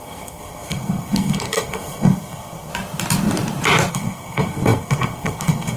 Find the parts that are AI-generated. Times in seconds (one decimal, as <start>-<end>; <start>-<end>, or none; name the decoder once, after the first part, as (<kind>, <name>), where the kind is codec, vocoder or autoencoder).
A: 0.0-2.7 (codec, SNAC); 3.9-5.8